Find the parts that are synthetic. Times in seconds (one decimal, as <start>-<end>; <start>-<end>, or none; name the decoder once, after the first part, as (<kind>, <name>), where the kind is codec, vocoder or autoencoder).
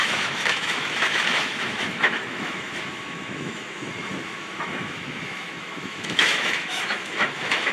0.0-7.7 (autoencoder, DAC-VAE)